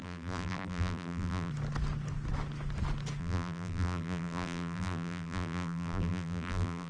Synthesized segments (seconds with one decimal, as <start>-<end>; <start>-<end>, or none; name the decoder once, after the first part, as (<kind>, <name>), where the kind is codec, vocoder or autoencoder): 0.0-1.5 (vocoder, BigVGAN v2); 3.2-6.9